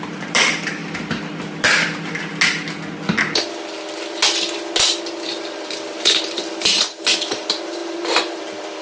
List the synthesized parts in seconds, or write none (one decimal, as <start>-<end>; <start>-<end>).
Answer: 0.0-0.8; 5.4-8.8